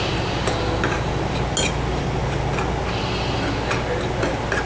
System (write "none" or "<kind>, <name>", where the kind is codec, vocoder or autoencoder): none